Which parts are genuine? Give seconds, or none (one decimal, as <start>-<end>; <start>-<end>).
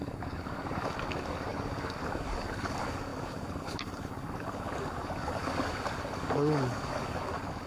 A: none